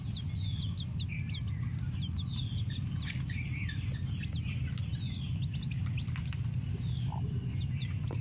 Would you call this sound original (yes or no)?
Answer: yes